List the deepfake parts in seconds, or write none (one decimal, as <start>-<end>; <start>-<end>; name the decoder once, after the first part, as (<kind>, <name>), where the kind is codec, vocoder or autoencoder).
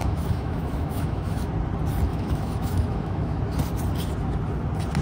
0.0-1.5 (autoencoder, DAC-VAE); 2.1-3.4